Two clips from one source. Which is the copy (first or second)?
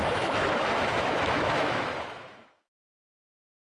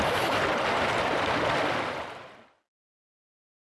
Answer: first